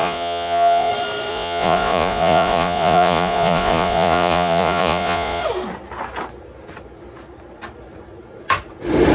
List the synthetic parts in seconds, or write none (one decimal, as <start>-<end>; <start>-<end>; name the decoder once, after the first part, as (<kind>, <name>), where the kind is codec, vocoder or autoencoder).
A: 0.0-0.9 (vocoder, Vocos); 1.3-5.4